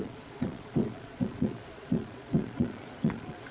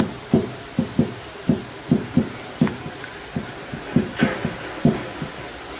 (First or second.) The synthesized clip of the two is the first